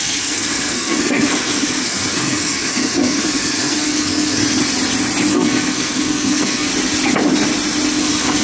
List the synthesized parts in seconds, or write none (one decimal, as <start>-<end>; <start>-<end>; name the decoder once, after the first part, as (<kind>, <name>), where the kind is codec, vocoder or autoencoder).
0.0-4.4 (codec, SNAC); 5.3-6.7; 8.0-8.4